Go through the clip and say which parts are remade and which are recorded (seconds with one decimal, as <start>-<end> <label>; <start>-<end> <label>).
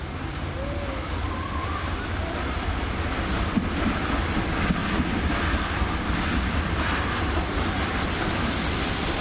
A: 0.0-9.2 recorded